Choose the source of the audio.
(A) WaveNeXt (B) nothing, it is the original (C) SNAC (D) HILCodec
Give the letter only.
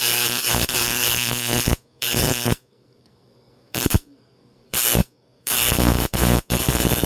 C